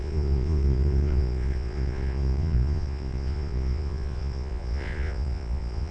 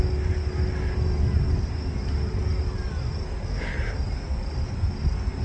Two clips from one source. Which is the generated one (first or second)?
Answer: first